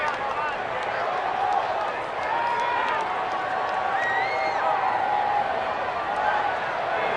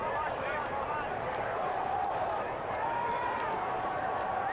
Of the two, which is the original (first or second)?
first